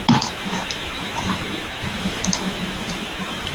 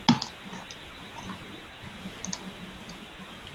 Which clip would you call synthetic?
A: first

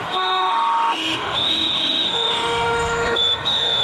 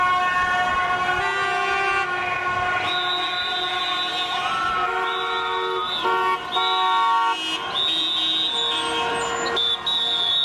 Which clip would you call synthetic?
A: first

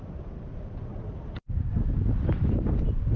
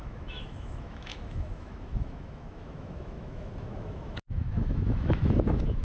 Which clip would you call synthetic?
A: second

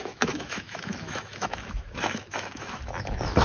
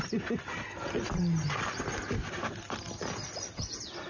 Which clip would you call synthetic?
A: first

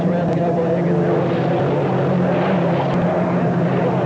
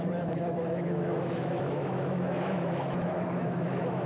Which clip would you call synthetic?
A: second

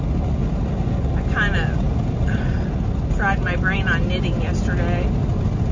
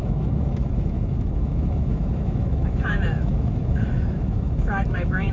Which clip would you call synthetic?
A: second